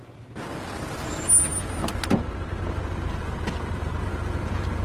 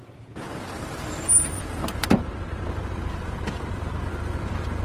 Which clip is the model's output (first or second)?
second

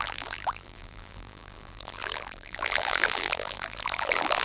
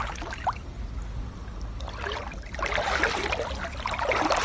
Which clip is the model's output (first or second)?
first